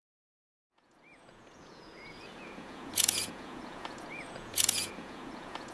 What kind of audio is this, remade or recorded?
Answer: remade